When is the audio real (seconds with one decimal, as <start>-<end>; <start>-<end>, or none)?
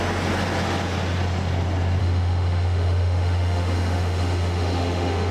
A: 0.0-2.0